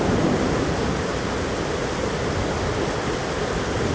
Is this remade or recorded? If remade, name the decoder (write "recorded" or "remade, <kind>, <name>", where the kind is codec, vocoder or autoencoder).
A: recorded